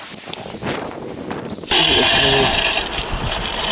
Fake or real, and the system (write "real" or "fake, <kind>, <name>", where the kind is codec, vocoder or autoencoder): real